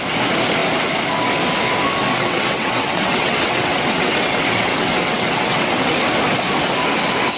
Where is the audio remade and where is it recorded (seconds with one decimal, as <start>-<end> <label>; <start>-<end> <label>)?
0.0-2.1 recorded; 2.1-5.9 remade; 5.9-7.4 recorded